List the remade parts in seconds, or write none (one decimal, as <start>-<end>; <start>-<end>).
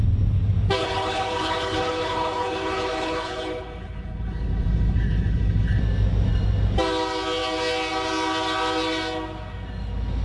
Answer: 0.8-5.8